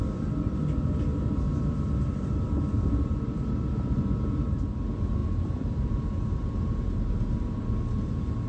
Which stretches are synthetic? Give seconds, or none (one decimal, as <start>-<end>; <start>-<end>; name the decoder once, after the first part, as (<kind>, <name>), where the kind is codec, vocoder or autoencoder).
none

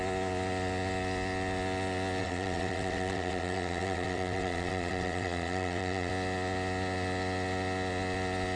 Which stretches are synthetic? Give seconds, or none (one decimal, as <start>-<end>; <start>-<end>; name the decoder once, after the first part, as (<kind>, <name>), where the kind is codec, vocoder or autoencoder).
2.2-6.1 (vocoder, WaveNeXt)